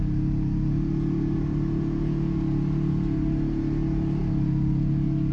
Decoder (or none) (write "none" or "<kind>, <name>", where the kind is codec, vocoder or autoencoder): none